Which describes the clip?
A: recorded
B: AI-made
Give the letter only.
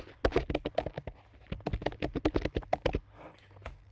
A